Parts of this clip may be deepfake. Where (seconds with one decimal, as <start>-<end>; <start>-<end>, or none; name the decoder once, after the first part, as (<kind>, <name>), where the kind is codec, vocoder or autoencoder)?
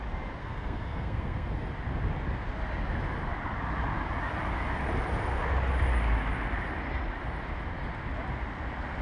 0.4-1.7 (codec, SNAC)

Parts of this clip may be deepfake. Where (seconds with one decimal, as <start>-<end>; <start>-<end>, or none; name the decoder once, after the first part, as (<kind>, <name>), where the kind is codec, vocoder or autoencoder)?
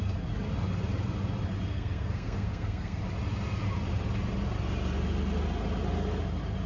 1.7-3.0 (codec, SNAC)